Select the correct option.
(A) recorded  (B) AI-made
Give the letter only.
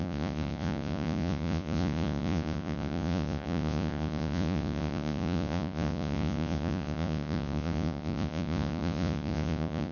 B